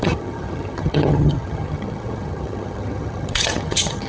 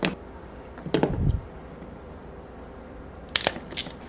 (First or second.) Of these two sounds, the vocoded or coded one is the first